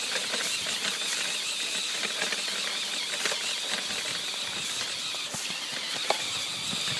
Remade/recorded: remade